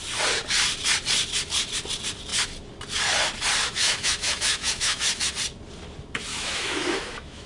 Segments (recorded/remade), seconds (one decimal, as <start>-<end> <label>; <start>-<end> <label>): 0.0-3.6 recorded; 3.6-5.3 remade; 5.3-6.3 recorded; 6.3-7.5 remade

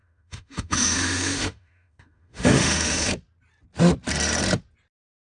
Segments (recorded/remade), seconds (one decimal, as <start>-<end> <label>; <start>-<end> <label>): 0.0-3.1 remade; 3.1-5.2 recorded

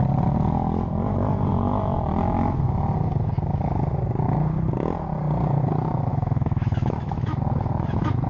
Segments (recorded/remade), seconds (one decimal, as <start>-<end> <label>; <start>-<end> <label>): 0.0-6.1 recorded; 6.1-7.4 remade; 7.4-8.3 recorded

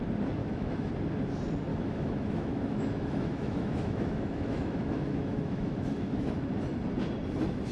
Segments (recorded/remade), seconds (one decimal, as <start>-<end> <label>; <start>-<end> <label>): 0.0-0.4 recorded; 0.4-0.9 remade; 0.9-1.7 recorded; 1.7-6.3 remade; 6.3-7.7 recorded

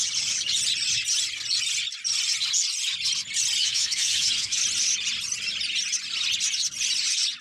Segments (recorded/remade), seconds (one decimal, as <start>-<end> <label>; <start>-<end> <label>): 0.0-3.6 recorded; 3.6-4.6 remade; 4.6-7.4 recorded